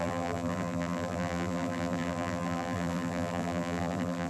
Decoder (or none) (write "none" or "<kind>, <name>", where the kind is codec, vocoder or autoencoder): vocoder, BigVGAN v2